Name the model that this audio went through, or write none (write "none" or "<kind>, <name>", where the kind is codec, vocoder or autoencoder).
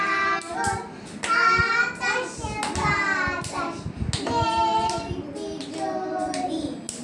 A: none